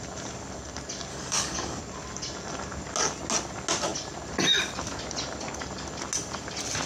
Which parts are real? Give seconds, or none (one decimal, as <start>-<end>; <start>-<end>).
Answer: 0.0-1.1; 1.8-6.9